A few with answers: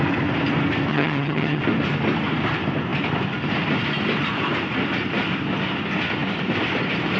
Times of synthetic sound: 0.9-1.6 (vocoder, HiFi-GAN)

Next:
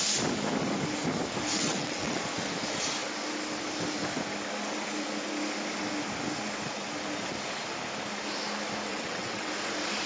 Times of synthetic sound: 1.5-2.2 (vocoder, WaveNeXt); 8.9-9.5

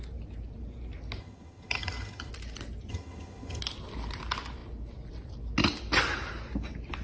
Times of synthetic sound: 1.2-2.3 (vocoder, HiFi-GAN); 2.9-3.6

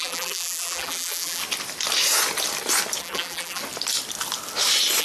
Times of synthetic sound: 0.0-1.4 (vocoder, BigVGAN v2); 3.0-3.6